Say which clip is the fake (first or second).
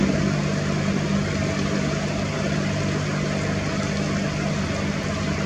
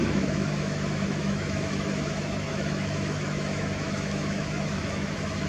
second